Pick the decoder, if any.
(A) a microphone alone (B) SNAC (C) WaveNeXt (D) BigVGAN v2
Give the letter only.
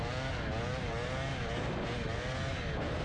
A